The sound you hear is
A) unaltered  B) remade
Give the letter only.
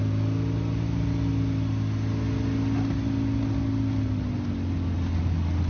A